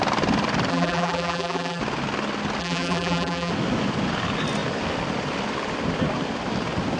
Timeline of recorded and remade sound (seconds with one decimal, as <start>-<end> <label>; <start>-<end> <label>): 0.0-0.7 recorded; 0.7-1.8 remade; 1.8-2.6 recorded; 2.6-3.5 remade; 3.5-7.0 recorded